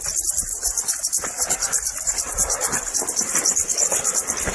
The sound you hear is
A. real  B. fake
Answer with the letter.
A